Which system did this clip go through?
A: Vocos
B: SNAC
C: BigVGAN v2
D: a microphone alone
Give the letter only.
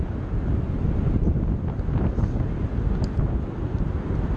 D